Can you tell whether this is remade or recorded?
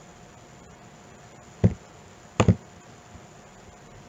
recorded